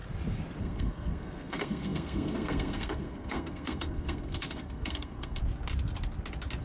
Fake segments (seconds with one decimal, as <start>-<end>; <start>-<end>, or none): 0.6-5.4